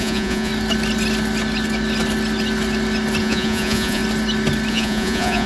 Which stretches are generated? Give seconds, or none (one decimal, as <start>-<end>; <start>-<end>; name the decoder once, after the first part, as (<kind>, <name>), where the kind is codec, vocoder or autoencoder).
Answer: 0.0-0.5 (vocoder, Vocos); 3.2-4.0; 4.7-5.5